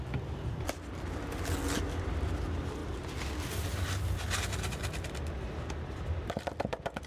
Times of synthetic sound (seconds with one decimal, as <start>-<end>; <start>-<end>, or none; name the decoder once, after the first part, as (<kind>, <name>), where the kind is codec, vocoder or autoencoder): none